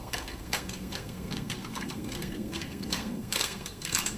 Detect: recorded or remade remade